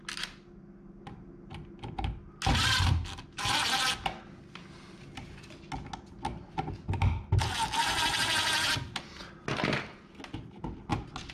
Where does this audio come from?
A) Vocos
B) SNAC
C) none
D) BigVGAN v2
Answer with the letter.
C